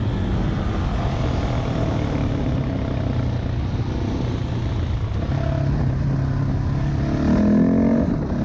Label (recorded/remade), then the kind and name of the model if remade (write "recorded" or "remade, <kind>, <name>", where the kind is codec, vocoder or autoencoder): recorded